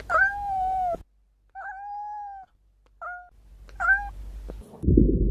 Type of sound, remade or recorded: recorded